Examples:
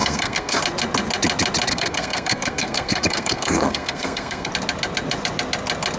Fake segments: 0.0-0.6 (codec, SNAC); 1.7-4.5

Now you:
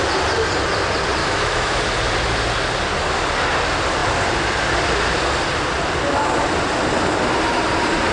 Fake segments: 1.2-1.8 (autoencoder, DAC-VAE)

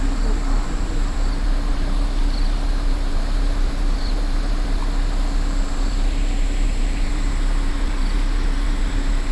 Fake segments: 0.0-4.8 (vocoder, BigVGAN v2); 5.6-9.3

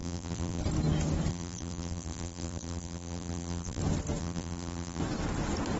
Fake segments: 0.0-0.6 (vocoder, BigVGAN v2); 1.3-3.8; 4.2-5.0

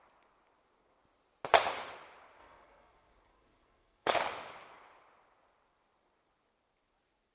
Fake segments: 2.4-4.1 (codec, SNAC)